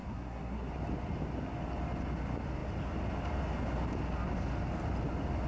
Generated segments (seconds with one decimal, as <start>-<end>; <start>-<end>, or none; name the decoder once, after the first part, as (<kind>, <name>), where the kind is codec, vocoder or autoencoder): 0.0-0.7 (codec, SNAC)